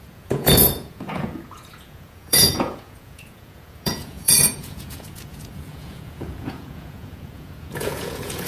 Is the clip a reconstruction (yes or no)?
yes